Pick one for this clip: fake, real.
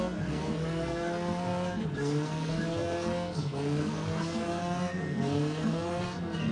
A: fake